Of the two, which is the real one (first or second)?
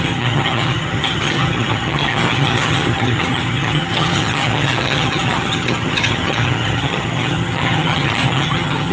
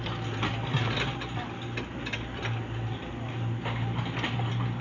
second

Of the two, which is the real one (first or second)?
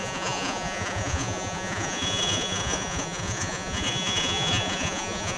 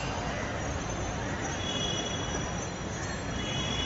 second